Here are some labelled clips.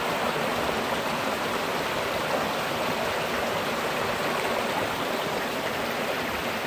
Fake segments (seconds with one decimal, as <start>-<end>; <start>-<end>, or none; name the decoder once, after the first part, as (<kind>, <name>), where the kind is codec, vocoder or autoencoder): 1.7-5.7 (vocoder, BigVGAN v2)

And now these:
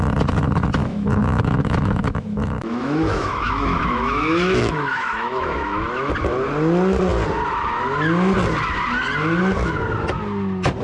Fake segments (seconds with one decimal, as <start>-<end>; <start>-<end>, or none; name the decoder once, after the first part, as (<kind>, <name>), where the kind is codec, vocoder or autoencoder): 0.9-6.1 (autoencoder, DAC-VAE)

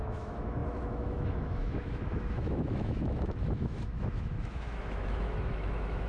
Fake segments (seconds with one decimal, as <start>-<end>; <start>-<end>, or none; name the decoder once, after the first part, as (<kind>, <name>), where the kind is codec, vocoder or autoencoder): 0.0-6.1 (autoencoder, DAC-VAE)